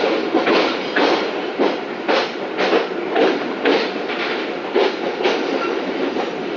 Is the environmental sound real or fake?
real